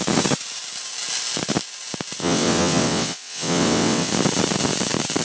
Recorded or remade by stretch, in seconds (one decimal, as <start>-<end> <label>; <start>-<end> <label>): 0.0-2.2 recorded; 2.2-4.1 remade; 4.1-5.2 recorded